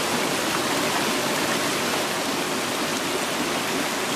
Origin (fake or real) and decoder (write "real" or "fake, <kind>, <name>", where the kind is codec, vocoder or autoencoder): real